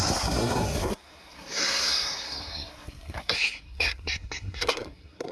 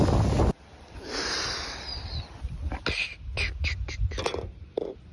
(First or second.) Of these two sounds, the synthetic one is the first